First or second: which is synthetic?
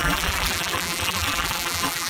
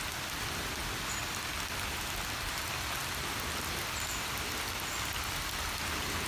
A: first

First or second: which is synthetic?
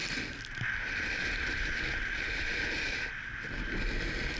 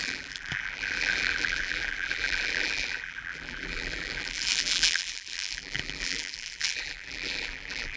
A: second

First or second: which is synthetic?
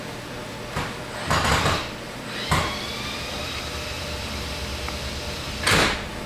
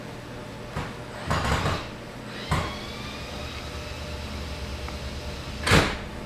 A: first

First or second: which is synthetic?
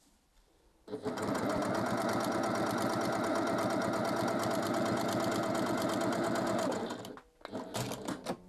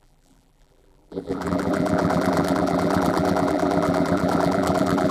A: second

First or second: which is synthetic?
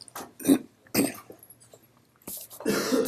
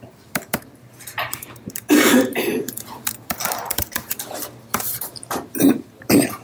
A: second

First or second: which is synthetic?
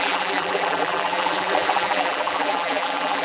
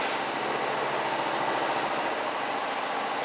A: first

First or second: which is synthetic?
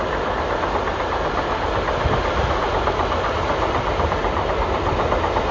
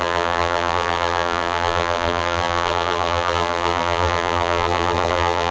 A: second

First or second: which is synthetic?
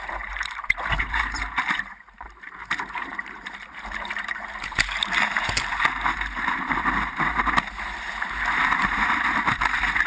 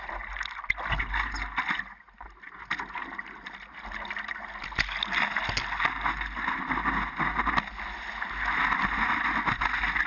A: first